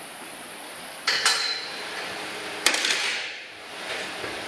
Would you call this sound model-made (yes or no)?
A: yes